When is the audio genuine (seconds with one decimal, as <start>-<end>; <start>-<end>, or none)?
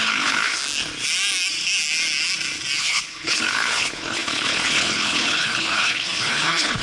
0.6-2.8